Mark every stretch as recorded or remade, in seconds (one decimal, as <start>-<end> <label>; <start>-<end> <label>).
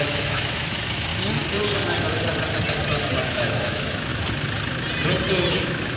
0.0-1.1 remade; 1.1-3.2 recorded; 3.2-4.1 remade; 4.1-5.5 recorded; 5.5-6.0 remade